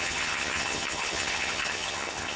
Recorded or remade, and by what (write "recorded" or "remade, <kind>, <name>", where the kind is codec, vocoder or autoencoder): remade, vocoder, HiFi-GAN